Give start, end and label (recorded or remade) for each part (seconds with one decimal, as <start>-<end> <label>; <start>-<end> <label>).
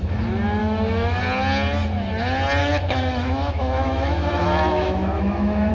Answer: 0.0-0.6 recorded; 0.6-1.2 remade; 1.2-2.6 recorded; 2.6-5.7 remade